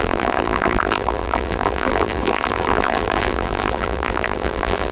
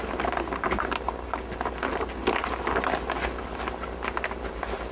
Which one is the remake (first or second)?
first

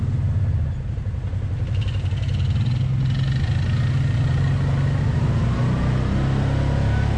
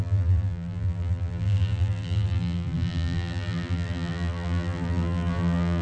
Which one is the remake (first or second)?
second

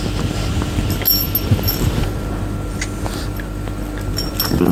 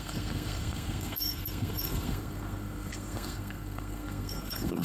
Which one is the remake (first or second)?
second